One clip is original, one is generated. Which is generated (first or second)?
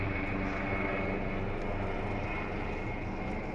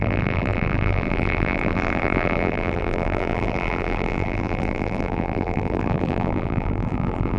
second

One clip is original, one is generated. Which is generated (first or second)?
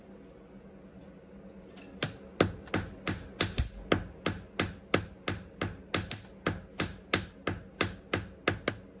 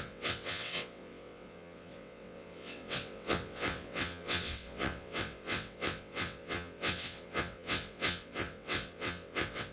second